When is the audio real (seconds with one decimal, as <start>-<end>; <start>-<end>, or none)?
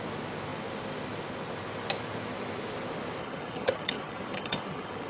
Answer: 0.0-3.2